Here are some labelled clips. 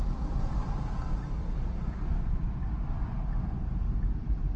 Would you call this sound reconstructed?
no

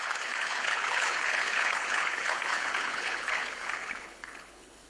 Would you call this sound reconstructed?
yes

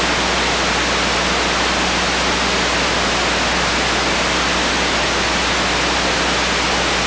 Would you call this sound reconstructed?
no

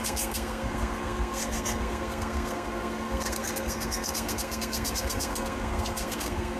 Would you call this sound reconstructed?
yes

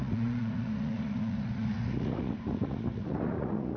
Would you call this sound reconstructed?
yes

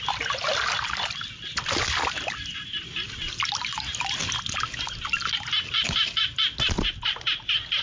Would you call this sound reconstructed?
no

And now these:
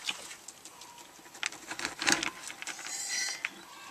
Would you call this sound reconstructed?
no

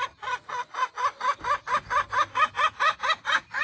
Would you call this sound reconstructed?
no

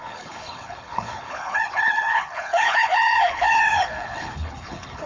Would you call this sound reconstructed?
yes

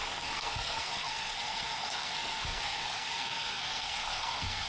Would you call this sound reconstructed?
yes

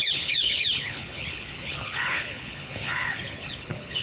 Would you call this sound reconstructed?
yes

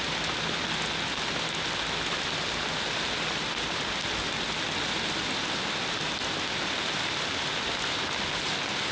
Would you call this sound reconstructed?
no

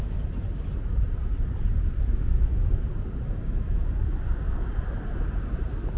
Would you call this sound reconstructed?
no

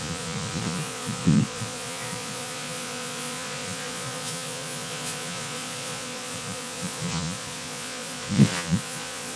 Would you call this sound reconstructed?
yes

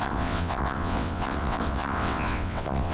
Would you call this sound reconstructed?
yes